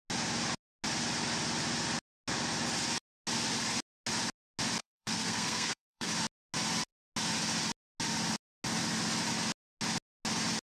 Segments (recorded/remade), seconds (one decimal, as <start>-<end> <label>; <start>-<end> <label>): 0.0-4.8 recorded; 4.8-6.1 remade; 6.1-10.7 recorded